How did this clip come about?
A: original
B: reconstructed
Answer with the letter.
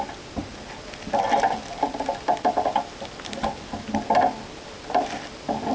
A